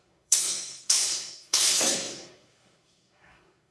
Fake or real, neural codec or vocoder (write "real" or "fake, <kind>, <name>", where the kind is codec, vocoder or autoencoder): fake, codec, SNAC